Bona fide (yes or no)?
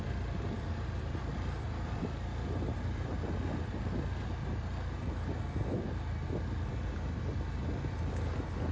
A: no